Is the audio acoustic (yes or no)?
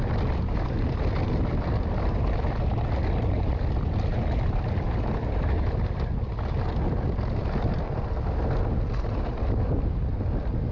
yes